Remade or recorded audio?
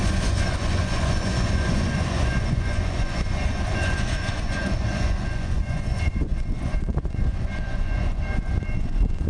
remade